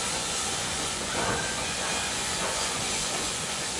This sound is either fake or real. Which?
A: fake